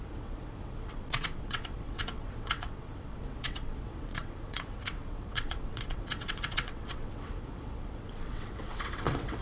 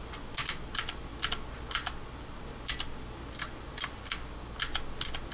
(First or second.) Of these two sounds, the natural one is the second